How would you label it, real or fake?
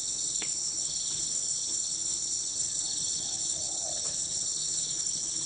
fake